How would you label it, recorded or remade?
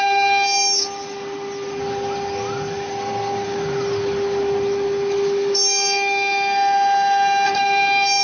recorded